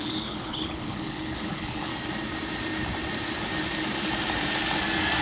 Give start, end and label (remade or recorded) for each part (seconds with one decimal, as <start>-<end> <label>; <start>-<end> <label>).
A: 0.0-1.9 remade; 1.9-5.2 recorded